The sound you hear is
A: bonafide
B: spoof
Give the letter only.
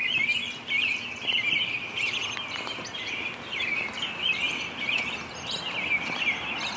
A